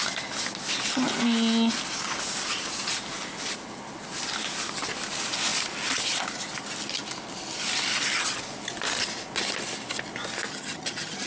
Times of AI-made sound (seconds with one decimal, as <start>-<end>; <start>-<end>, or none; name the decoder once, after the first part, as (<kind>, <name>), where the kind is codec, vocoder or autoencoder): 10.5-11.3 (vocoder, HiFi-GAN)